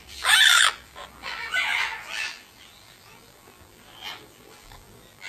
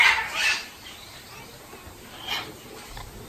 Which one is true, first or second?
second